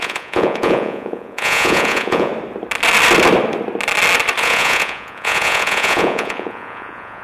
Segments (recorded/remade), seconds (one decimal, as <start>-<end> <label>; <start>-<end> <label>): 0.0-2.3 remade; 2.3-4.4 recorded; 4.4-7.2 remade